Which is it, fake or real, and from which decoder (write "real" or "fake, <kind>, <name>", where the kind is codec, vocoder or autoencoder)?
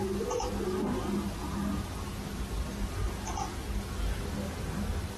real